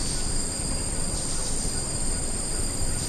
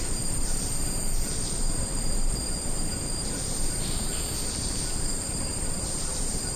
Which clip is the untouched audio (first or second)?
first